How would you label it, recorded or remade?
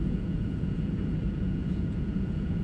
remade